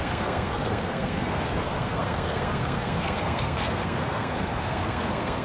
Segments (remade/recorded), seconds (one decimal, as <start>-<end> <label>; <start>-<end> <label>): 0.0-5.4 remade